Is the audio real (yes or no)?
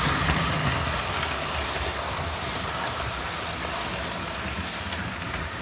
yes